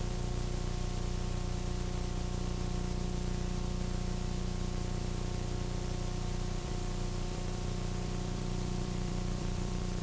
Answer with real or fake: fake